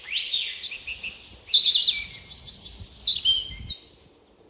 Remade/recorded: recorded